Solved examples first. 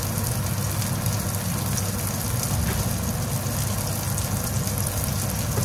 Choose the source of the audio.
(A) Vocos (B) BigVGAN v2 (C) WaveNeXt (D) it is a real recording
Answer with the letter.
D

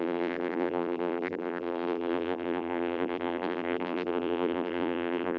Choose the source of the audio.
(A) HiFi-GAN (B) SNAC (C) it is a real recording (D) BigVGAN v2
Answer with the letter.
D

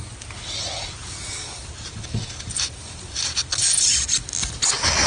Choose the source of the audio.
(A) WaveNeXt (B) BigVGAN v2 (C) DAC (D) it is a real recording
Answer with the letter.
D